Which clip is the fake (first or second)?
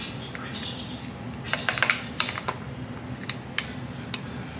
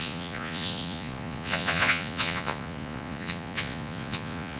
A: second